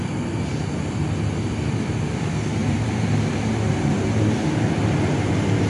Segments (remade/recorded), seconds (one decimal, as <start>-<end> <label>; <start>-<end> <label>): 0.0-2.6 recorded; 2.6-5.3 remade; 5.3-5.7 recorded